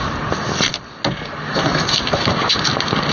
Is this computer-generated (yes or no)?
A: no